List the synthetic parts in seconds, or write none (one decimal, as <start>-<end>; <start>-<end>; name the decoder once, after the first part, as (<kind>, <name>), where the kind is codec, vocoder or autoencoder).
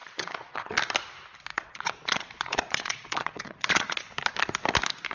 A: 0.0-0.7 (vocoder, Vocos); 1.5-4.0